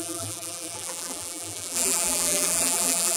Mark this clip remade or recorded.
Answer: remade